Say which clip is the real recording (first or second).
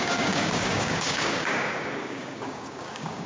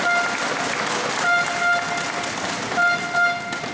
second